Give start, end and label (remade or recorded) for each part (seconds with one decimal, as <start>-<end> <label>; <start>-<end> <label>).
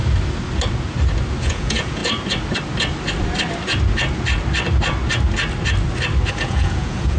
0.0-1.4 recorded; 1.4-2.0 remade; 2.0-6.3 recorded; 6.3-7.2 remade